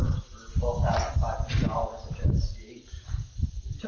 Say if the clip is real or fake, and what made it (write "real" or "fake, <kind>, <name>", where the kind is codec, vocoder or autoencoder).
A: real